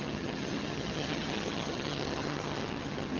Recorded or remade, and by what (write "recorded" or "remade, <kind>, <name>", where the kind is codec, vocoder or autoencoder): remade, vocoder, HiFi-GAN